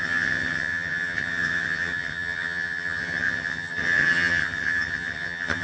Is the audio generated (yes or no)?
yes